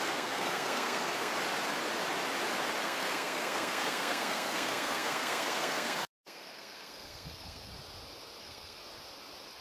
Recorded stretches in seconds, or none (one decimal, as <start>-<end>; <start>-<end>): 1.3-2.8; 7.7-8.4; 8.8-9.6